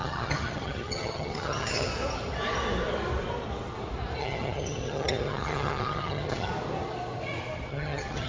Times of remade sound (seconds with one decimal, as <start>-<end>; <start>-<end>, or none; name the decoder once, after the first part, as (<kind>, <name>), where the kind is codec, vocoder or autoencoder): 0.0-1.9 (vocoder, HiFi-GAN); 4.2-6.5; 7.7-8.3